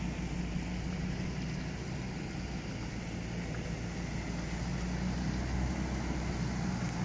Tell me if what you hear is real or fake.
real